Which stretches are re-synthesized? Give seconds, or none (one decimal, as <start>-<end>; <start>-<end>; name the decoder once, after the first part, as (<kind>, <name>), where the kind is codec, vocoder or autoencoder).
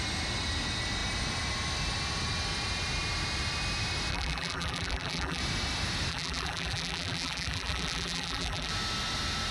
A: 4.1-5.4 (vocoder, BigVGAN v2); 6.1-8.7